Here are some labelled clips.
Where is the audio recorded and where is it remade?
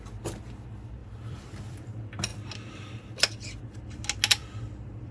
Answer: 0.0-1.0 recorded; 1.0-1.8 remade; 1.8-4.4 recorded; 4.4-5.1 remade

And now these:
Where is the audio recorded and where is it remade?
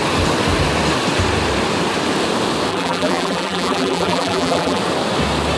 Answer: 0.0-2.7 recorded; 2.7-4.8 remade; 4.8-5.6 recorded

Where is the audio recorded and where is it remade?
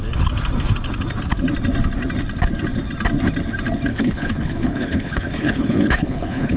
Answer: 0.0-3.9 recorded; 3.9-6.6 remade